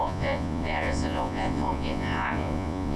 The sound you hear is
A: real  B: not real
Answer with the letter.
B